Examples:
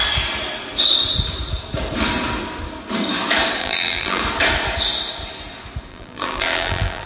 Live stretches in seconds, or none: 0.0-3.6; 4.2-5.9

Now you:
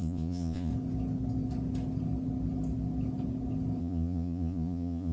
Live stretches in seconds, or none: 0.7-3.8

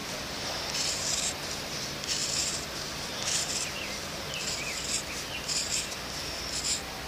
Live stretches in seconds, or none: 0.7-2.2; 6.5-7.1

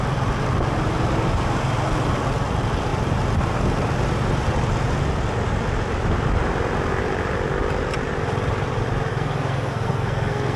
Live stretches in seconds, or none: 0.0-9.1

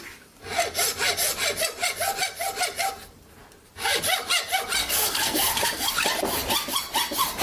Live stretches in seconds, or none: 0.0-4.8; 5.9-7.4